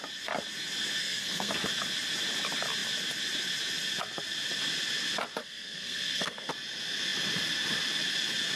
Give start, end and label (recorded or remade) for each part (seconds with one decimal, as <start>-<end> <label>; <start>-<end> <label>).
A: 0.0-1.0 recorded; 1.0-1.5 remade; 1.5-5.4 recorded; 5.4-6.5 remade; 6.5-8.6 recorded